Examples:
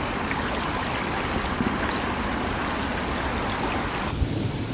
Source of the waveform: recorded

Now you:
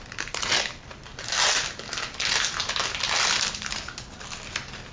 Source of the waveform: recorded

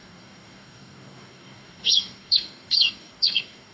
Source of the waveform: remade